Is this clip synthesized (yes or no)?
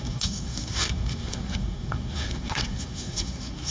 yes